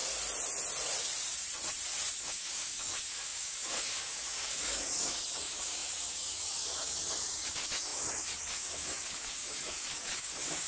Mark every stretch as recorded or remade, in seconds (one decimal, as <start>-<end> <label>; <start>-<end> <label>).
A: 0.0-2.2 recorded; 2.2-10.7 remade